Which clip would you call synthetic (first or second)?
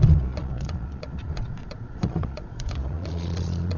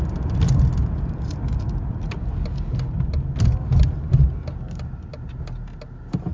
first